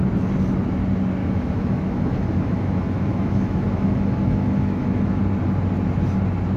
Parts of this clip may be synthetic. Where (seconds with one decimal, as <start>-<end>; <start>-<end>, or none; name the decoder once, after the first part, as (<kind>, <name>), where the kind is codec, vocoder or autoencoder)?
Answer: 1.2-5.2 (autoencoder, DAC-VAE)